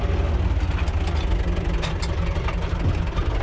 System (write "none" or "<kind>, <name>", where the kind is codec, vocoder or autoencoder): none